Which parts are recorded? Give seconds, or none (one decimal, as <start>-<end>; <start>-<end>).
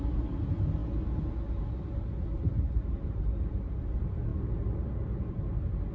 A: 0.0-5.9